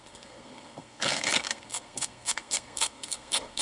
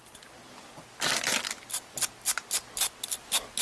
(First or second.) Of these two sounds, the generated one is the first